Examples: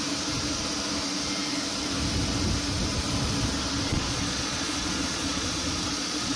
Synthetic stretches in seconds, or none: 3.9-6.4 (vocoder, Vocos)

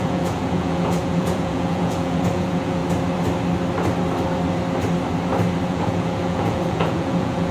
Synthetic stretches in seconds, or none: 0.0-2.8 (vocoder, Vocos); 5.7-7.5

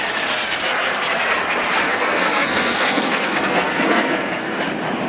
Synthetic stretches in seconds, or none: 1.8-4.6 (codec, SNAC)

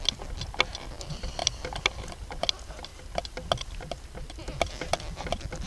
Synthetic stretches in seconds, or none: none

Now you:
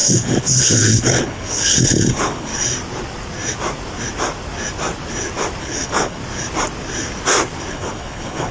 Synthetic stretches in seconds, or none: 0.0-2.5 (codec, HILCodec); 5.6-6.2; 7.7-8.5